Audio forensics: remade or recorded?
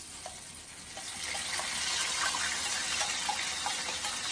recorded